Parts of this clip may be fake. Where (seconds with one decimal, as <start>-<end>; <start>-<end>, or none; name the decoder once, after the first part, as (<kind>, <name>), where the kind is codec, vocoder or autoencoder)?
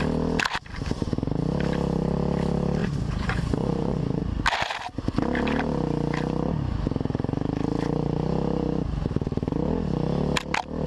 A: 2.8-4.2 (vocoder, Vocos)